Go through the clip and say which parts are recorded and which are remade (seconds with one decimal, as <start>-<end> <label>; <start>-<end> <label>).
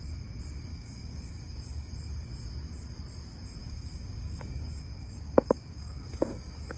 0.0-0.7 recorded; 0.7-1.9 remade; 1.9-3.6 recorded; 3.6-6.8 remade